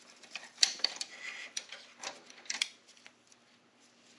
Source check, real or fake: fake